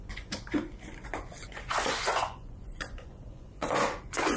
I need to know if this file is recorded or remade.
remade